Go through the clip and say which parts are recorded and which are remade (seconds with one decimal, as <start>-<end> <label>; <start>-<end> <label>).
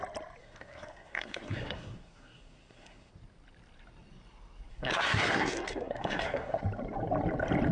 0.0-0.4 recorded; 0.4-3.1 remade; 3.1-4.7 recorded; 4.7-6.6 remade; 6.6-7.7 recorded